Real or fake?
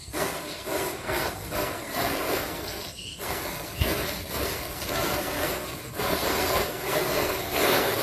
fake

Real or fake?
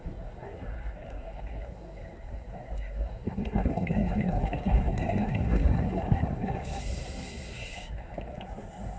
fake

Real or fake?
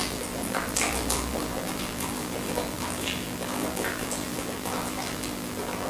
fake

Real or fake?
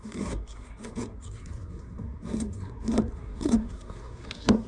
fake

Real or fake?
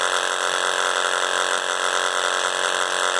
real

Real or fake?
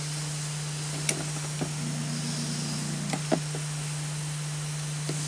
real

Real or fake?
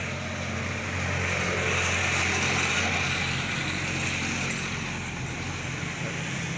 real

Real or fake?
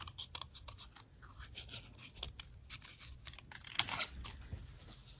real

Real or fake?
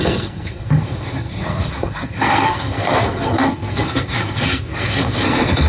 fake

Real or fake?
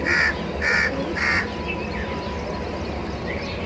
real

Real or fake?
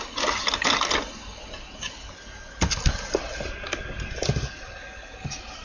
real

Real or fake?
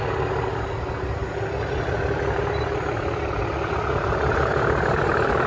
real